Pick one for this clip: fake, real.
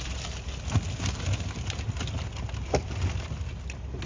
real